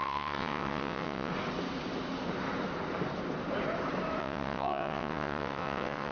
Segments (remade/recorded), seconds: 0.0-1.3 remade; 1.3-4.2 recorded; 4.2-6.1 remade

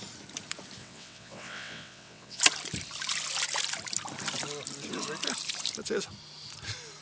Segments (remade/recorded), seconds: 0.0-0.8 recorded; 0.8-2.4 remade; 2.4-7.0 recorded

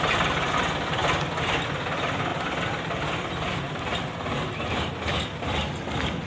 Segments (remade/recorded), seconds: 0.0-6.3 recorded

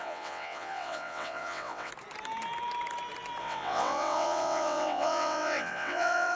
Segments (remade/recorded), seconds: 0.0-1.9 remade; 1.9-3.4 recorded; 3.4-6.4 remade

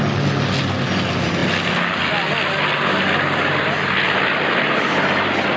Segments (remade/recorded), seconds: 0.0-5.6 recorded